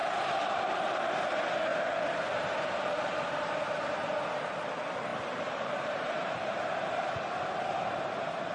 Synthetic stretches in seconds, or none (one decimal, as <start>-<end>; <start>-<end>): 0.0-1.1; 1.7-3.6; 5.1-6.9